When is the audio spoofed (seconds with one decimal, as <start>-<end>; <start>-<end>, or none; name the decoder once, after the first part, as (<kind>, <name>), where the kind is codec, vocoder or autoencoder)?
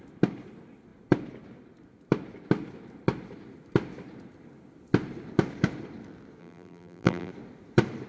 6.4-7.3 (vocoder, BigVGAN v2)